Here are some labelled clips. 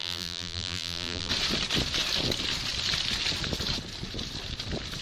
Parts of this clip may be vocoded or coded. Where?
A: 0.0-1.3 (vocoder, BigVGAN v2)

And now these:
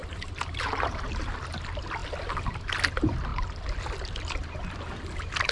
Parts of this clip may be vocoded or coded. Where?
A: 0.0-1.3 (vocoder, BigVGAN v2)

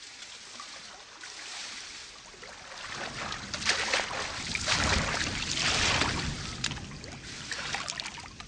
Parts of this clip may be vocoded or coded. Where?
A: 1.5-2.0 (vocoder, BigVGAN v2)

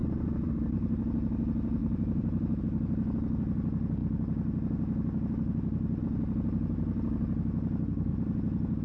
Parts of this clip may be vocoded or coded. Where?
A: 0.0-0.5 (vocoder, BigVGAN v2); 1.8-2.6; 8.1-8.8

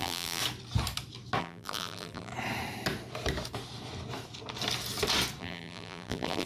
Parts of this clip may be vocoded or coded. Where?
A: 0.0-0.4 (vocoder, BigVGAN v2); 1.4-2.3; 5.4-6.5